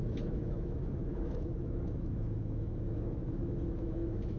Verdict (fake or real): fake